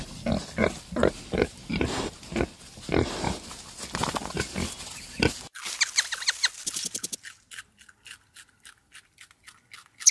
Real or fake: real